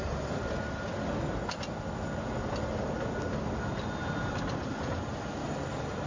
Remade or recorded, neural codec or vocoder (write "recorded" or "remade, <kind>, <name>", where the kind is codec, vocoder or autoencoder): recorded